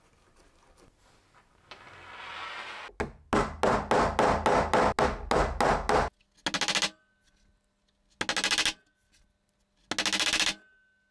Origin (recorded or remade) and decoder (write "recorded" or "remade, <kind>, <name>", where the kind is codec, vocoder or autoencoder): recorded